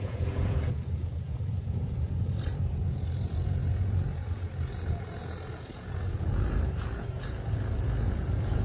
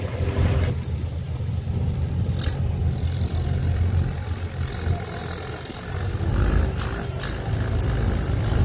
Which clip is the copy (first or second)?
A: first